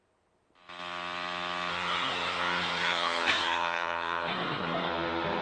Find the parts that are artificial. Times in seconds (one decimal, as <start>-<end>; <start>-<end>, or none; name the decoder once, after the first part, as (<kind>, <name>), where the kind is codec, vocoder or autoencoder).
1.7-4.9 (codec, SNAC)